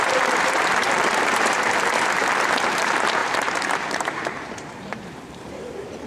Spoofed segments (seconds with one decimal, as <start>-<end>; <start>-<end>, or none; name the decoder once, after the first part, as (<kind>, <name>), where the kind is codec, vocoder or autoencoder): 0.0-6.1 (vocoder, BigVGAN v2)